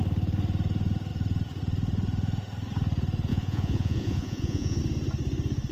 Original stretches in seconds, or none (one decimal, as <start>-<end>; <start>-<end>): 0.0-3.3; 4.8-5.7